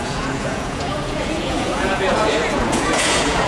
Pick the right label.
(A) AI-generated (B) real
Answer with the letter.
A